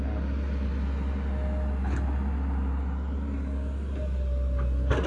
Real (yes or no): yes